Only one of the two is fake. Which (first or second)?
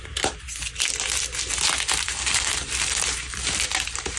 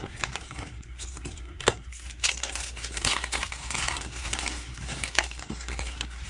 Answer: second